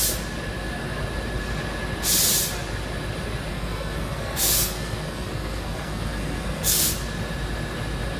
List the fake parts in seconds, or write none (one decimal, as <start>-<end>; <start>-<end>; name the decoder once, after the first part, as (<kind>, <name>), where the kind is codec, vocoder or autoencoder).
3.5-6.9 (codec, SNAC)